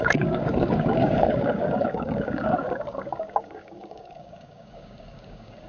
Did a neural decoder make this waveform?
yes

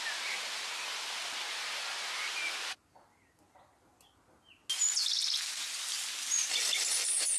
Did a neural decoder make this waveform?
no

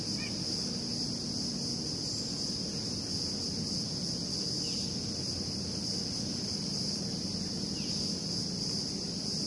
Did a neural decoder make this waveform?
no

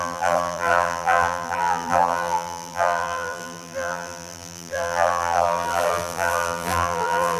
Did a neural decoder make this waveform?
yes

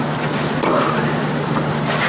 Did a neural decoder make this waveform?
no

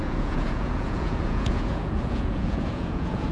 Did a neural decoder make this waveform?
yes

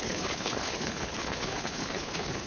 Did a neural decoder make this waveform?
yes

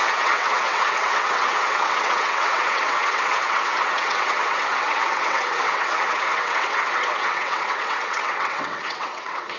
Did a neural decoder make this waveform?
yes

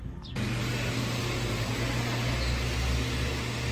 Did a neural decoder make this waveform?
no